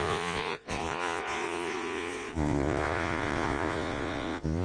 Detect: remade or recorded remade